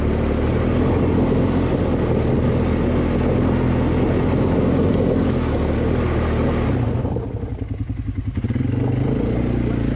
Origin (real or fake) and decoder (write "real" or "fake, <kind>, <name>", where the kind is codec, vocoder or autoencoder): real